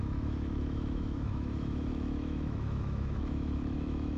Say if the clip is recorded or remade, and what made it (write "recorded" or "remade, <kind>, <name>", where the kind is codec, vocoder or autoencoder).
remade, autoencoder, DAC-VAE